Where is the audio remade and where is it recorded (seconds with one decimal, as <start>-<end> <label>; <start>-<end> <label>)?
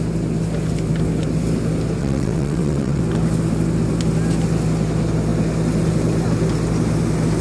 0.0-2.0 recorded; 2.0-3.0 remade; 3.0-7.4 recorded